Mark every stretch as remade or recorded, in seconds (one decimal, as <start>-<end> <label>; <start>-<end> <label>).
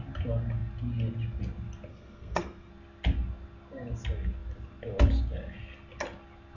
0.0-1.9 recorded; 1.9-2.7 remade; 2.7-6.6 recorded